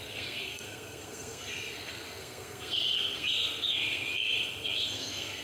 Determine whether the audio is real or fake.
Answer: fake